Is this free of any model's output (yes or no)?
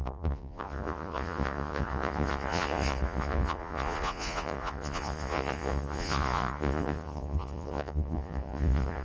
no